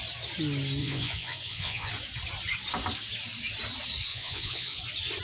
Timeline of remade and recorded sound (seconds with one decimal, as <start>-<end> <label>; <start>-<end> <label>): 0.0-0.8 recorded; 0.8-1.9 remade; 1.9-4.1 recorded; 4.1-4.8 remade; 4.8-5.2 recorded